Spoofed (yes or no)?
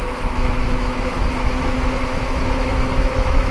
yes